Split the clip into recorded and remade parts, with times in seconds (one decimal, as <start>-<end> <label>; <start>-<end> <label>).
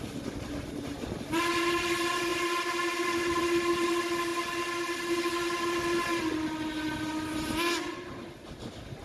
0.0-9.0 recorded